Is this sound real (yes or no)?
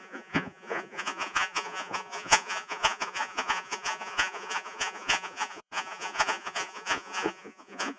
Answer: no